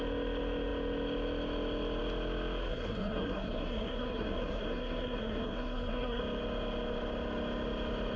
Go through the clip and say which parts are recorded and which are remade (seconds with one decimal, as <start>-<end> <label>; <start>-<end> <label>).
0.0-2.7 recorded; 2.7-6.2 remade; 6.2-8.2 recorded